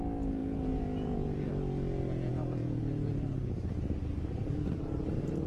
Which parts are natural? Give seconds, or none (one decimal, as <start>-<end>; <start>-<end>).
0.0-0.4; 1.5-2.3; 3.1-5.5